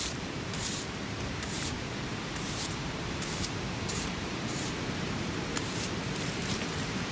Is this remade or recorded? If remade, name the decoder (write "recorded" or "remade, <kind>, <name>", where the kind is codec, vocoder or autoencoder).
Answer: remade, vocoder, BigVGAN v2